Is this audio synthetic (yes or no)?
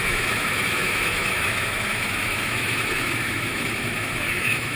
yes